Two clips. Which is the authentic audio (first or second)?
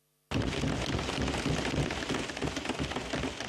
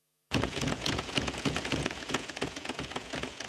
first